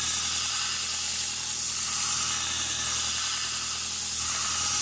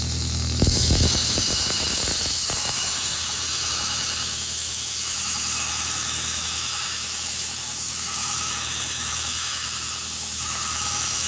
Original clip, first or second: first